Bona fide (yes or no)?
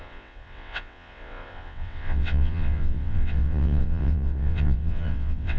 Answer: no